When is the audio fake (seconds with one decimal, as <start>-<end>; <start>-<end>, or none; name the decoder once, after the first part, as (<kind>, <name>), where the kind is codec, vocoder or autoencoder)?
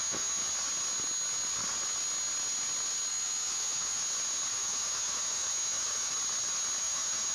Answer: 0.0-0.4 (autoencoder, DAC-VAE); 3.1-4.0; 4.5-6.1; 6.8-7.3